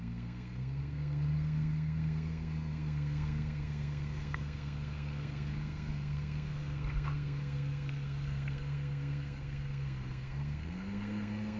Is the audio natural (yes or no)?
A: no